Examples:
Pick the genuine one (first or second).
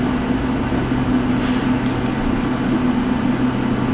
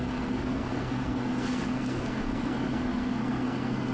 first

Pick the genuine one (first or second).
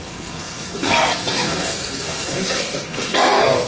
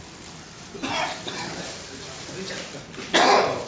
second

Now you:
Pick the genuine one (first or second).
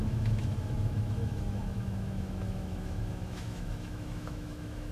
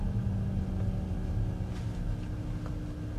second